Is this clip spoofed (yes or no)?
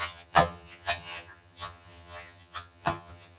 yes